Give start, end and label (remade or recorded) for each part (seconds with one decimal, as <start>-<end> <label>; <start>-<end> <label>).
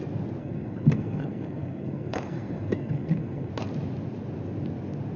0.0-0.4 recorded; 0.4-3.5 remade; 3.5-5.2 recorded